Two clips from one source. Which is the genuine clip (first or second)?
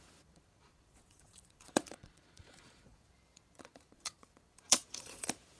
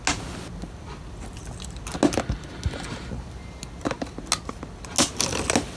second